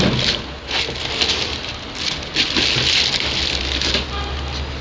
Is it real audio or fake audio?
real